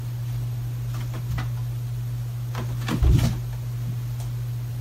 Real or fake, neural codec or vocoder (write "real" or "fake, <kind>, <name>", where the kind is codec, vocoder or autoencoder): real